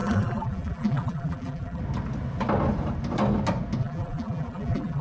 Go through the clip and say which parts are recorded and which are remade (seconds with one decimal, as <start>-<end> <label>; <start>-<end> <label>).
0.0-1.8 remade; 1.8-3.8 recorded; 3.8-5.0 remade

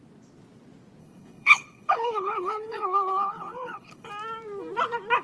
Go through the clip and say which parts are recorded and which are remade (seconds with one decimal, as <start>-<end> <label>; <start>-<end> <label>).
0.0-1.0 recorded; 1.0-4.1 remade; 4.1-5.2 recorded

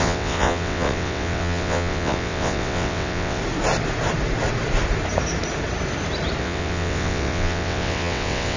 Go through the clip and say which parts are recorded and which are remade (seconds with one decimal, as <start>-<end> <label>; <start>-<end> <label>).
0.0-3.4 remade; 3.4-6.4 recorded; 6.4-8.6 remade

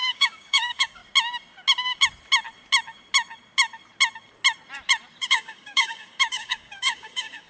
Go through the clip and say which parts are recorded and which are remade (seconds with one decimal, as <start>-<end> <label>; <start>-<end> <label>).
0.0-1.0 remade; 1.0-5.3 recorded; 5.3-7.5 remade